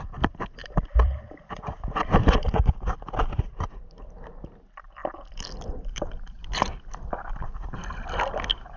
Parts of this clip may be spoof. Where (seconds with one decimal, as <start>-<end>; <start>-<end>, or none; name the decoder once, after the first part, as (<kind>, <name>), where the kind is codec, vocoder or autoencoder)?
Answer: 0.6-1.6 (vocoder, BigVGAN v2); 5.0-8.2